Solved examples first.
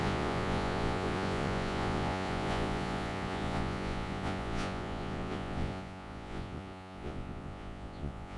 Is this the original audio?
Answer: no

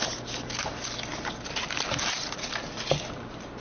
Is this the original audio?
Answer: yes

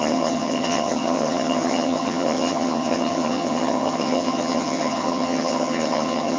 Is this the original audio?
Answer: no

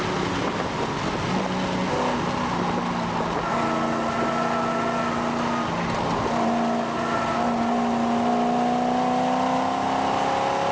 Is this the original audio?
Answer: yes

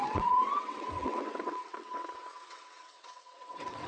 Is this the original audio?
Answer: no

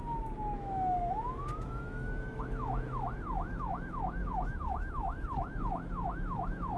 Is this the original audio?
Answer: no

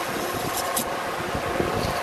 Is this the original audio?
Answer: yes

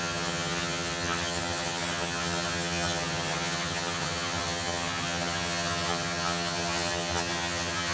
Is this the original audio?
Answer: no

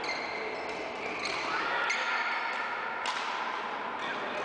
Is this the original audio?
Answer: yes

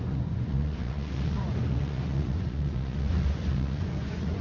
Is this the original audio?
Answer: no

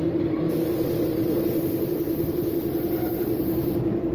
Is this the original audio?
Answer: no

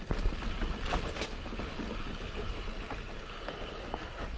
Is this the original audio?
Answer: yes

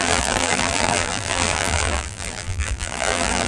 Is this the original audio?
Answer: no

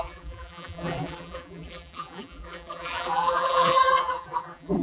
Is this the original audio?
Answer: no